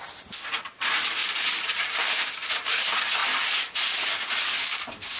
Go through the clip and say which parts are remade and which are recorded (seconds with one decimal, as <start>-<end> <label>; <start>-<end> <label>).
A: 0.0-1.2 recorded; 1.2-2.8 remade; 2.8-5.2 recorded